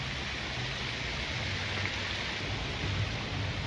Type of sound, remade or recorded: recorded